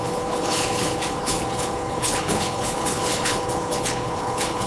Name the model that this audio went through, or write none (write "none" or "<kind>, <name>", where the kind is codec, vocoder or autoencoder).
codec, HILCodec